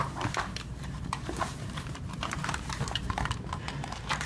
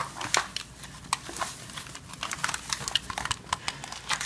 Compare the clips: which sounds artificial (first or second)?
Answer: first